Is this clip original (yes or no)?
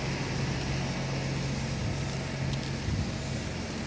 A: yes